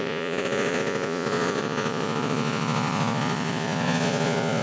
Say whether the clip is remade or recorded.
remade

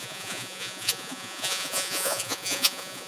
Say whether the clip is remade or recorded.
remade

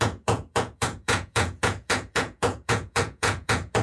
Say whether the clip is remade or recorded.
remade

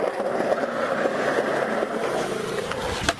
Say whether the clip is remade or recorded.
recorded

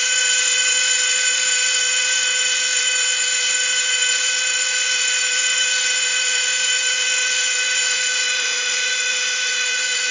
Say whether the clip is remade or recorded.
remade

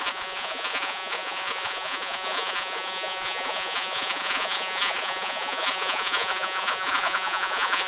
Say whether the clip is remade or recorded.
remade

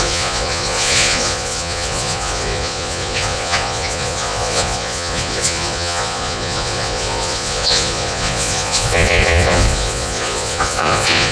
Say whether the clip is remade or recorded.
remade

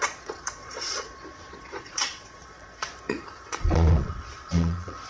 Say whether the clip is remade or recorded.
remade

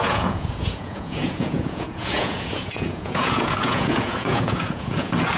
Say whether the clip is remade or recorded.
remade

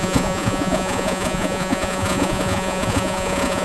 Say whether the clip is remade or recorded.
remade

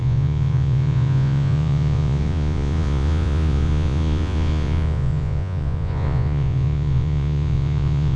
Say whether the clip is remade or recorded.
remade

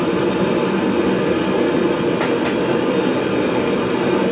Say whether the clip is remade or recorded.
recorded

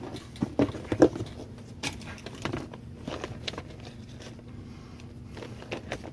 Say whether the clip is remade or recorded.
recorded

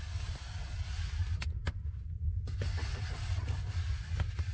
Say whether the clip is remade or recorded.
recorded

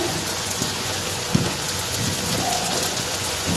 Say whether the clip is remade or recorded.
remade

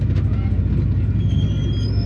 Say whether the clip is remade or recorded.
recorded